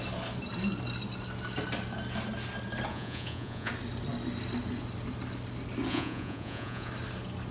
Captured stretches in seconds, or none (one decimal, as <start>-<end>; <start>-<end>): 0.0-2.9; 3.7-5.9; 6.9-7.5